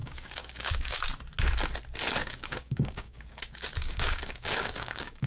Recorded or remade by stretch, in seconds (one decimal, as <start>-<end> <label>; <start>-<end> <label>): 0.0-1.0 remade; 1.0-2.2 recorded; 2.2-5.3 remade